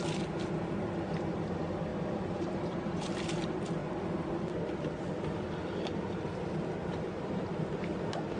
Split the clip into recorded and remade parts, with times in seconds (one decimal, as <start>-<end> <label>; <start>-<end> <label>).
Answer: 0.0-1.9 recorded; 1.9-3.2 remade; 3.2-6.8 recorded; 6.8-7.5 remade; 7.5-8.4 recorded